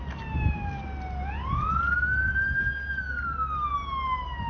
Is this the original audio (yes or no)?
yes